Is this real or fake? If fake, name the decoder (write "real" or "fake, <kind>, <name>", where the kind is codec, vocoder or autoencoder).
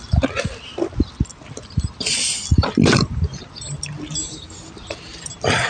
real